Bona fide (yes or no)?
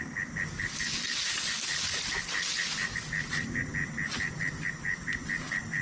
yes